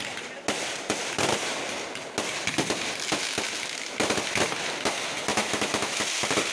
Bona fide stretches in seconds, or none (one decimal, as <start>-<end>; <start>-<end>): 0.0-5.3; 6.0-6.5